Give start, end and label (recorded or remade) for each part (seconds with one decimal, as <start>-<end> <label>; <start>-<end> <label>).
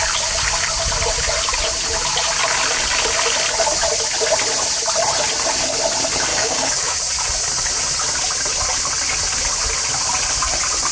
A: 0.0-6.3 recorded; 6.3-7.0 remade; 7.0-10.9 recorded